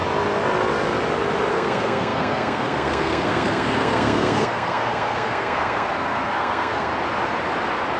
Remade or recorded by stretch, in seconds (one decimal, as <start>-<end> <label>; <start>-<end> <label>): 0.0-1.5 recorded; 1.5-6.9 remade; 6.9-8.0 recorded